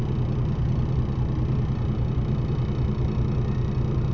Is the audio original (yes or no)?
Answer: yes